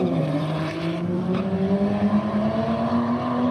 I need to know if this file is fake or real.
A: fake